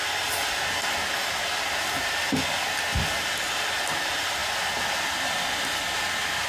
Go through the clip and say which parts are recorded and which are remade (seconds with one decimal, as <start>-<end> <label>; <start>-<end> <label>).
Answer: 0.0-4.4 remade; 4.4-5.1 recorded; 5.1-6.5 remade